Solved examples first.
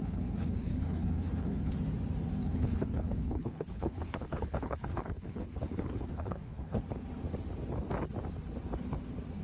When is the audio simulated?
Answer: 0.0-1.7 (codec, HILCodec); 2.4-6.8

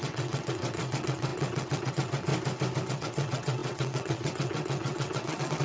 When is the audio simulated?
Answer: 0.0-2.3 (vocoder, WaveNeXt); 2.9-5.6

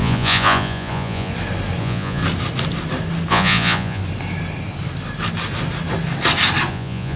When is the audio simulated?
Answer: 0.0-1.3 (vocoder, Vocos); 1.8-2.2; 3.3-4.0; 6.7-7.2

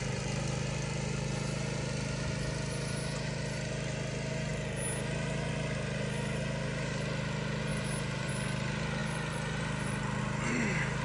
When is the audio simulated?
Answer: 7.7-8.3 (vocoder, BigVGAN v2)

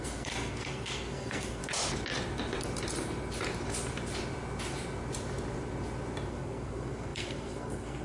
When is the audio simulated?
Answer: 0.0-1.6 (codec, SNAC); 6.3-8.0

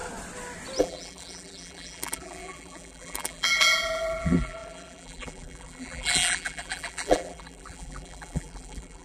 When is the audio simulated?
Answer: 0.8-9.0 (vocoder, BigVGAN v2)